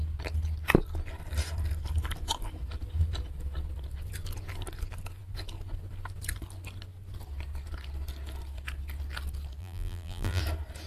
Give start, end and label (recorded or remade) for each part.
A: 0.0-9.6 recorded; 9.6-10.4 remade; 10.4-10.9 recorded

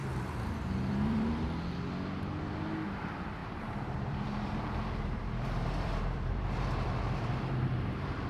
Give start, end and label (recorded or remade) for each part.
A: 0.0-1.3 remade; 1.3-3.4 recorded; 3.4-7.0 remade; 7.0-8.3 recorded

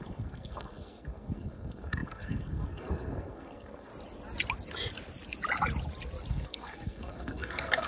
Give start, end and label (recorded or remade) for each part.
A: 0.0-3.9 remade; 3.9-6.3 recorded; 6.3-7.9 remade

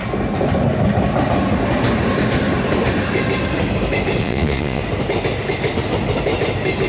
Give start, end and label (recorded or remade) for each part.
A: 0.0-4.2 recorded; 4.2-4.8 remade; 4.8-6.9 recorded

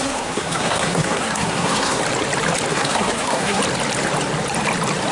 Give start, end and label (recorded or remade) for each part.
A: 0.0-2.0 remade; 2.0-2.7 recorded; 2.7-3.6 remade; 3.6-5.1 recorded

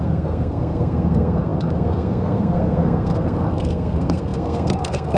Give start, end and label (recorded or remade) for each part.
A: 0.0-5.2 remade

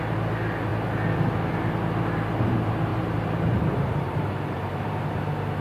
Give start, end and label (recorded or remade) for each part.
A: 0.0-2.9 recorded; 2.9-5.1 remade; 5.1-5.6 recorded